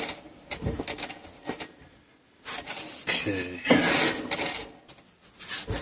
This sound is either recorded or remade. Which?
recorded